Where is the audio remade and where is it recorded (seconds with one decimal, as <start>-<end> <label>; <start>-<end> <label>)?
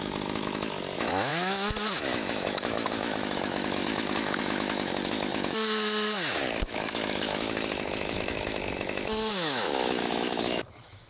0.0-11.1 remade